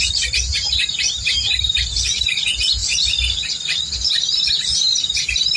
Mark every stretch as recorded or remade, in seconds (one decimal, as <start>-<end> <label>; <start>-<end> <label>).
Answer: 0.0-0.5 recorded; 0.5-2.2 remade; 2.2-5.6 recorded